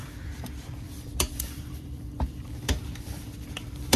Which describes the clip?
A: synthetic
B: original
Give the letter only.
A